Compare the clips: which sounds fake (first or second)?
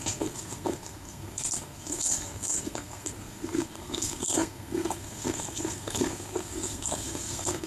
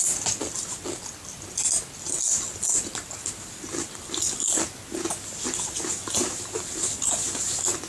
first